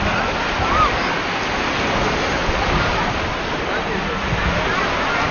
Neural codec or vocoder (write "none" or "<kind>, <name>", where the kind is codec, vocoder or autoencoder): none